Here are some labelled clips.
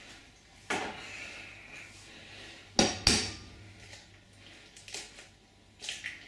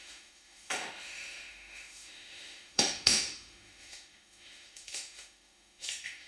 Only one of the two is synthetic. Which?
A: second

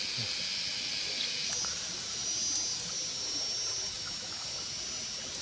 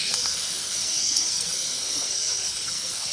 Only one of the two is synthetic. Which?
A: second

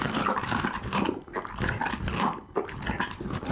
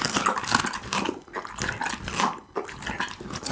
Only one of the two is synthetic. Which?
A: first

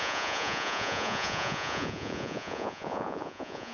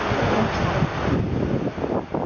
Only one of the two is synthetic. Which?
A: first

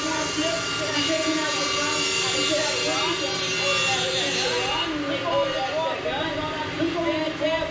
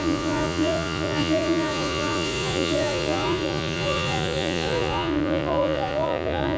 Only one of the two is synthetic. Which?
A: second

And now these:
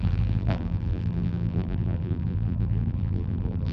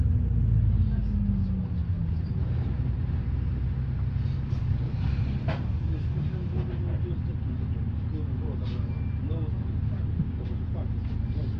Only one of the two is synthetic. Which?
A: first